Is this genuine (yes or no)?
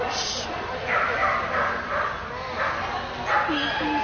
yes